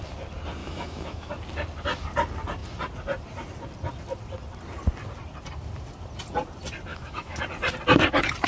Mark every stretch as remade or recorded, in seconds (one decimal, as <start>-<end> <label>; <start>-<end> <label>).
0.0-0.6 recorded; 0.6-1.3 remade; 1.3-6.9 recorded; 6.9-7.4 remade; 7.4-8.5 recorded